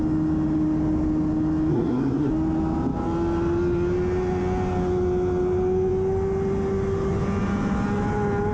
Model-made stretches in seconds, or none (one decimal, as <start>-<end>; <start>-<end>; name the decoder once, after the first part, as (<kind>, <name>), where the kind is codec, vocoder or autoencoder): 1.7-2.3 (codec, SNAC)